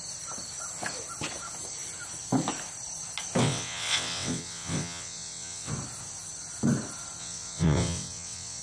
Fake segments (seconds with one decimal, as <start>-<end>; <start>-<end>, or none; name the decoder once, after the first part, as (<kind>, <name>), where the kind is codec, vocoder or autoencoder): 3.4-5.7 (vocoder, WaveNeXt); 7.2-8.6